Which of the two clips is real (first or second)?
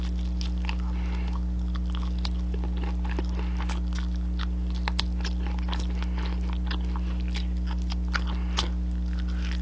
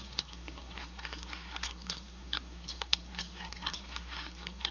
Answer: first